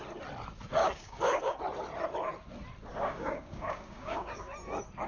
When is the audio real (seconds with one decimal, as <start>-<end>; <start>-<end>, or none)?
0.0-0.8; 1.6-2.9; 4.5-5.1